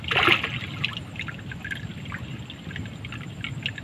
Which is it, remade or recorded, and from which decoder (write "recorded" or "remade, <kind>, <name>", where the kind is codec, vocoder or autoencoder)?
recorded